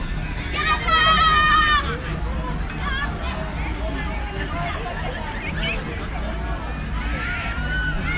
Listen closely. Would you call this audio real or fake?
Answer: real